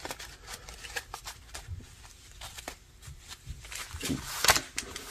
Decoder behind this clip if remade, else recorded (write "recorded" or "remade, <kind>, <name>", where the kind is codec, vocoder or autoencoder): remade, vocoder, BigVGAN v2